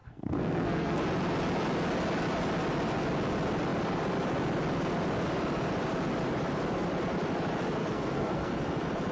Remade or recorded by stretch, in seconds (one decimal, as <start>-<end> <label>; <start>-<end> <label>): 0.0-1.0 remade; 1.0-7.8 recorded; 7.8-8.5 remade; 8.5-9.1 recorded